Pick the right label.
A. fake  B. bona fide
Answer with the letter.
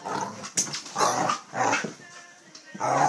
B